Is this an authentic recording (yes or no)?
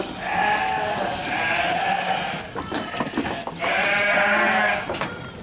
yes